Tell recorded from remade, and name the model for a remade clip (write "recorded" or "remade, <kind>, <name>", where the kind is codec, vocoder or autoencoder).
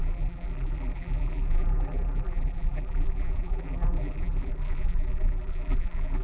remade, vocoder, BigVGAN v2